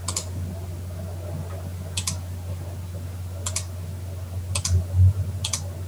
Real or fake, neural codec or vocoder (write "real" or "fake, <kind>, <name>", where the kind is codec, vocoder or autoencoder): real